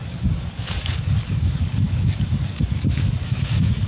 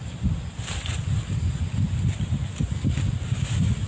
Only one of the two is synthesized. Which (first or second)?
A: first